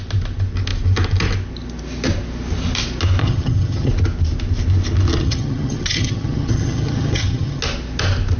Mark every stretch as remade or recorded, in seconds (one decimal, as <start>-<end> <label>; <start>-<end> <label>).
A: 0.0-3.2 recorded; 3.2-3.9 remade; 3.9-5.2 recorded; 5.2-7.6 remade; 7.6-8.4 recorded